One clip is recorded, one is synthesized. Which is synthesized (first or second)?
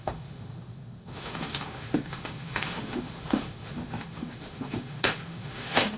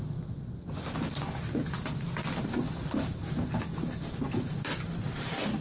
first